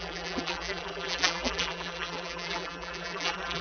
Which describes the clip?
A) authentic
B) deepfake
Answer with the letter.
B